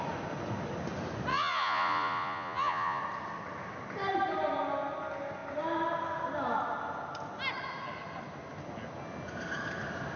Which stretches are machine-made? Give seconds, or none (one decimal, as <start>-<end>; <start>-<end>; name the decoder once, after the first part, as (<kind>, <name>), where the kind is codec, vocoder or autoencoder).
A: 1.3-3.0 (vocoder, Vocos)

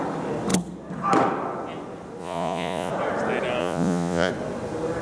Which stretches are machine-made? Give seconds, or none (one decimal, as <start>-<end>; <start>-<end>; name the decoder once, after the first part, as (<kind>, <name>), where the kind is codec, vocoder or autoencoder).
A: 2.2-2.9 (vocoder, Vocos); 3.6-4.3

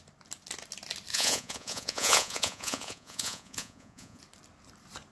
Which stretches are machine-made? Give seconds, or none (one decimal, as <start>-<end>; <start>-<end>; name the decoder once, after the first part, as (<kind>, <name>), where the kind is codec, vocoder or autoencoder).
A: 1.1-4.2 (vocoder, Vocos)

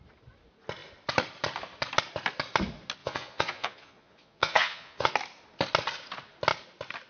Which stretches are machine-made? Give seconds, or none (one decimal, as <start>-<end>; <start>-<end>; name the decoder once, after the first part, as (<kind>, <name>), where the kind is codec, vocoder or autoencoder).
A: 3.0-5.1 (vocoder, Vocos)